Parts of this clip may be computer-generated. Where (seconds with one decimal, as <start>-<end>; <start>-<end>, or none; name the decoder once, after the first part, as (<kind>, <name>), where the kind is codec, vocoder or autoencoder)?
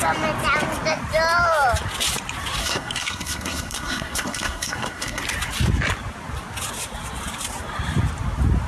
2.6-5.2 (codec, SNAC)